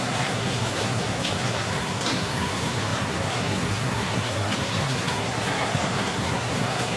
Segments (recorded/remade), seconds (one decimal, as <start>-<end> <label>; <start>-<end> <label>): 0.0-7.0 remade